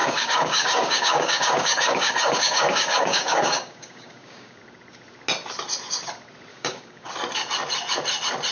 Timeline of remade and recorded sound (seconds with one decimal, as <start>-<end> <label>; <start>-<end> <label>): 0.0-4.6 remade; 4.6-6.5 recorded; 6.5-7.1 remade; 7.1-8.5 recorded